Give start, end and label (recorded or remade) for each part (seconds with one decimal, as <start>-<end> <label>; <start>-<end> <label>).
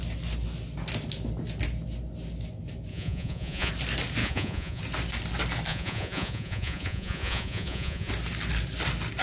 0.0-2.9 recorded; 2.9-3.7 remade; 3.7-4.2 recorded; 4.2-4.8 remade; 4.8-5.7 recorded; 5.7-8.1 remade; 8.1-9.2 recorded